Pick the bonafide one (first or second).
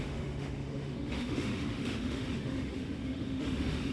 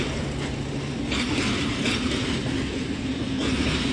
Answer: second